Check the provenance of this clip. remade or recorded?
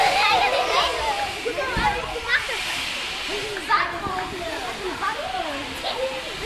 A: recorded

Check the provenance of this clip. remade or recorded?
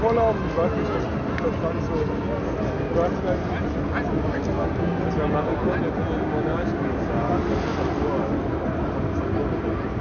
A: recorded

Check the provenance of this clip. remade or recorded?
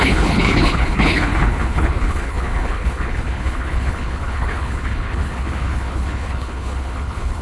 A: remade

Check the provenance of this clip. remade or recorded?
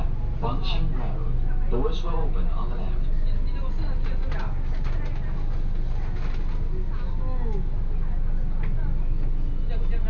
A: recorded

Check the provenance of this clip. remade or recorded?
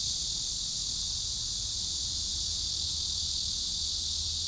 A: recorded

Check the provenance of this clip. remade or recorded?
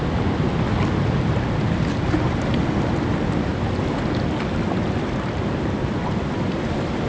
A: recorded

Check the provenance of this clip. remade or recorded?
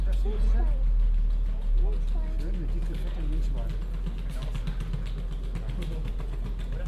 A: recorded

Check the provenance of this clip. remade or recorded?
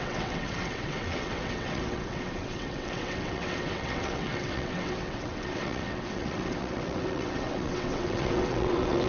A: remade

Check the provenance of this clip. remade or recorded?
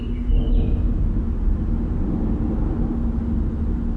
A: recorded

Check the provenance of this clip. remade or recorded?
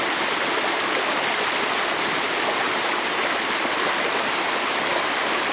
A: recorded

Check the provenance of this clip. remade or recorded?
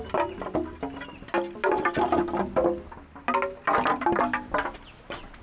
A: recorded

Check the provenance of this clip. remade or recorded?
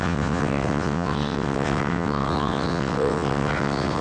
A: remade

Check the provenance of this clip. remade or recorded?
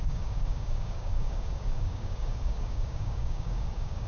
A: remade